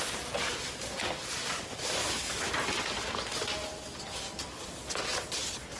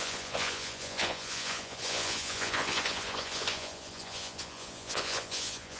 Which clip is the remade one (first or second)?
second